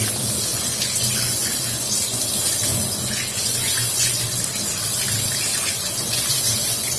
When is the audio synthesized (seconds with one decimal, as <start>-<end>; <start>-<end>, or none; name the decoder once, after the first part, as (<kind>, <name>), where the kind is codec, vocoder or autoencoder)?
0.5-2.2 (vocoder, Vocos); 2.7-4.4; 5.5-7.0